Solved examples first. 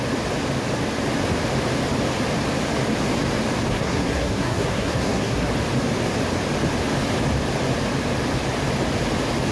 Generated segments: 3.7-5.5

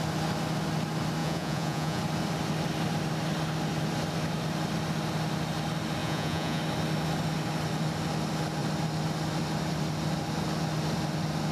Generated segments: 1.2-2.0; 6.0-6.6